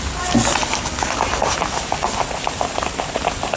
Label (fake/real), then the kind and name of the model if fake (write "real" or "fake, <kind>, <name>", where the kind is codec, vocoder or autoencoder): real